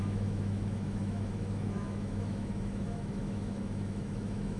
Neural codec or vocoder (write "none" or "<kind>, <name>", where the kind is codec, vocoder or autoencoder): autoencoder, DAC-VAE